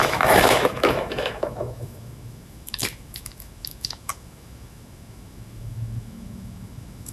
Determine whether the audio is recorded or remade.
remade